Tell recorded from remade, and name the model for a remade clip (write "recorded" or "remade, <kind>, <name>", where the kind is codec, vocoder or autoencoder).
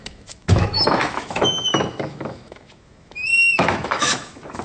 remade, autoencoder, DAC-VAE